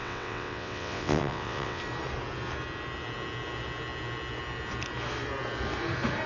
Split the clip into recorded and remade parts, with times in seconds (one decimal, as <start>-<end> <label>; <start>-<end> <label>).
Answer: 0.0-1.8 remade; 1.8-6.3 recorded